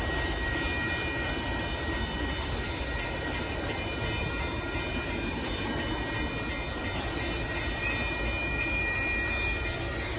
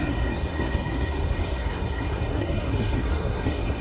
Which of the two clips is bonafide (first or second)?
first